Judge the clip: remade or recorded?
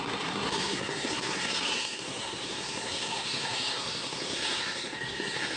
remade